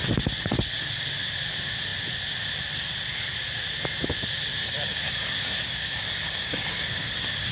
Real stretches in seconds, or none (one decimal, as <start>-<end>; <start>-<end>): 0.0-4.6